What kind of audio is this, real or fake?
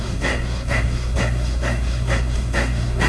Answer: fake